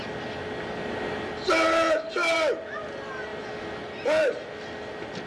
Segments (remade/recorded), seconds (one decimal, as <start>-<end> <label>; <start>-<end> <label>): 0.0-5.3 recorded